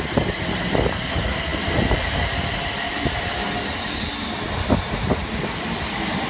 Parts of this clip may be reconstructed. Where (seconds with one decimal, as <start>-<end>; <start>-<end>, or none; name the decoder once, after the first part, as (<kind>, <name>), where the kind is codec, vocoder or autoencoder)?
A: none

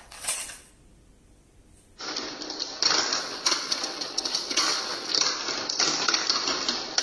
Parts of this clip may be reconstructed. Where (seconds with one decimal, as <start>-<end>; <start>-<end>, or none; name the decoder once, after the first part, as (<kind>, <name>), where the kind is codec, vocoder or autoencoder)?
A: 0.0-0.7 (vocoder, WaveNeXt); 3.2-5.1